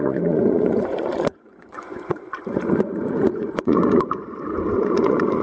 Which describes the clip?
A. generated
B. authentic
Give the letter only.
A